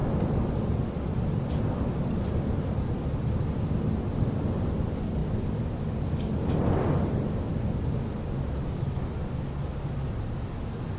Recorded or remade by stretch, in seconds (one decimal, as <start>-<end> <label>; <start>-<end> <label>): 0.0-11.0 recorded

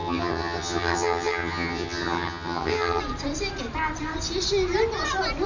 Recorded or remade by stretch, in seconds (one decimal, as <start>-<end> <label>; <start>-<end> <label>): 0.0-3.0 remade; 3.0-5.5 recorded

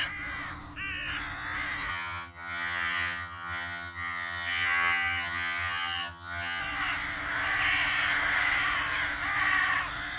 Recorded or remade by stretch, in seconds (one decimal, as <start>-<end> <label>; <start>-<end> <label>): 0.0-1.9 recorded; 1.9-6.6 remade; 6.6-10.2 recorded